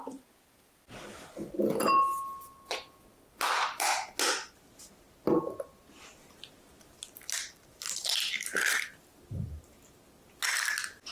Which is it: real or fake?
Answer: real